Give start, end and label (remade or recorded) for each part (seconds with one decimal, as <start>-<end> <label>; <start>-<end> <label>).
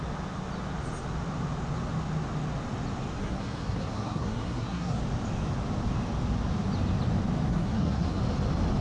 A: 0.0-3.2 recorded; 3.2-5.0 remade; 5.0-7.5 recorded; 7.5-8.2 remade; 8.2-8.8 recorded